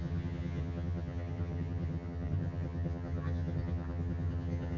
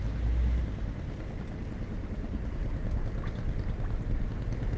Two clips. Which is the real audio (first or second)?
second